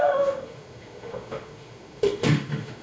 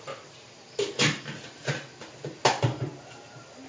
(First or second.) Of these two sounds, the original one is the second